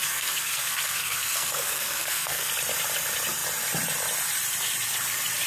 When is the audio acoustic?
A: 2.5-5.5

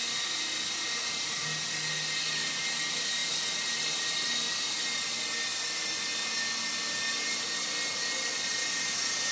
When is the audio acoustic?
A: 0.0-9.3

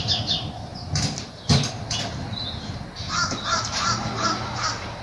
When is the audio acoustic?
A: 0.0-5.0

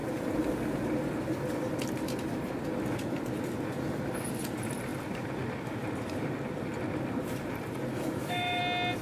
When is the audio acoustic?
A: 0.0-7.9; 8.6-9.0